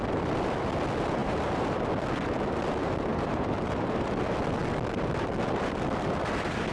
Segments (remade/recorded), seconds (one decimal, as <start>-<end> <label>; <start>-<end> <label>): 0.0-1.2 recorded; 1.2-1.8 remade; 1.8-3.1 recorded; 3.1-4.1 remade; 4.1-6.7 recorded